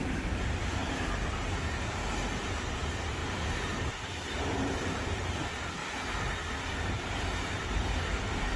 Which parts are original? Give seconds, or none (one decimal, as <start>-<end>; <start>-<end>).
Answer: 5.8-6.7